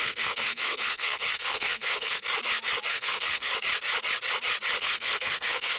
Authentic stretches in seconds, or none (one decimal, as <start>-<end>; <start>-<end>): 2.2-2.9; 3.5-4.8